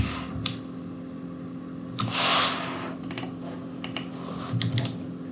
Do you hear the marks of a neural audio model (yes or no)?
no